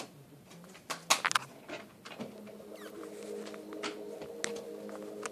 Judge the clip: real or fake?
real